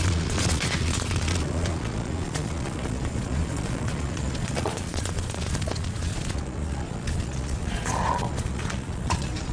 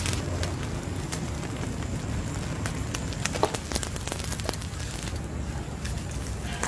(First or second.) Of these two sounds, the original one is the second